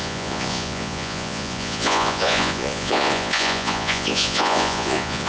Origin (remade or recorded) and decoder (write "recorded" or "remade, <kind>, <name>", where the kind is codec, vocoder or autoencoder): remade, vocoder, Vocos